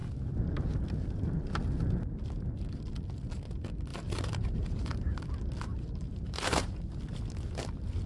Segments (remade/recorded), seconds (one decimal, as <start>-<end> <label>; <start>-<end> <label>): 0.0-3.9 recorded; 3.9-5.2 remade; 5.2-5.7 recorded; 5.7-7.0 remade; 7.0-8.1 recorded